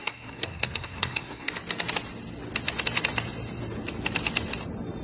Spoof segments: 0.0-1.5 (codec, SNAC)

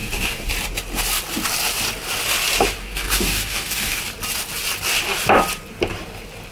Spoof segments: 0.0-0.5 (codec, DAC); 2.8-4.0

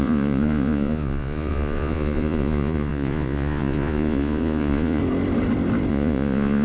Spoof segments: 0.0-5.0 (vocoder, Vocos); 5.9-6.6